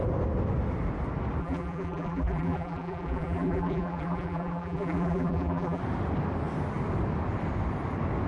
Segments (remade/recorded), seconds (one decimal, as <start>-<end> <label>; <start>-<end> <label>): 0.0-1.4 recorded; 1.4-5.8 remade; 5.8-8.3 recorded